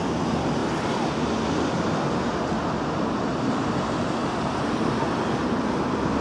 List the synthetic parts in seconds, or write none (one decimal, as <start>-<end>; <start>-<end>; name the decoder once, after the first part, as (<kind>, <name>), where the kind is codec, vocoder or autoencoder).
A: none